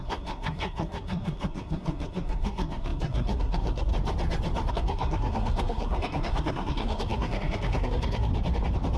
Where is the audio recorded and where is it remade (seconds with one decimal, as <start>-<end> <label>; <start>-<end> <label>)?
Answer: 0.0-3.9 remade; 3.9-4.7 recorded; 4.7-8.3 remade; 8.3-9.0 recorded